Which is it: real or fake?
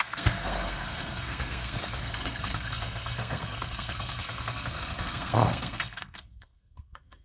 fake